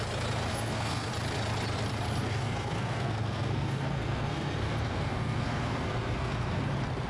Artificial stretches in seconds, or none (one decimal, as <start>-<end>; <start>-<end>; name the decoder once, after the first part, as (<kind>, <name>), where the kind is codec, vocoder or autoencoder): 0.5-1.1 (codec, SNAC); 2.3-6.6